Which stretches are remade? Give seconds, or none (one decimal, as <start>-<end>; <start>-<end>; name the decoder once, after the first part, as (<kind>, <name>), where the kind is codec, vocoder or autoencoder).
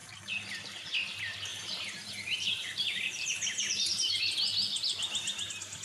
0.0-0.5 (vocoder, BigVGAN v2); 1.5-4.2